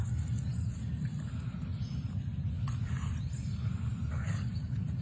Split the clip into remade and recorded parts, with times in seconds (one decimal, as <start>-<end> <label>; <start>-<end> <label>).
0.0-5.0 recorded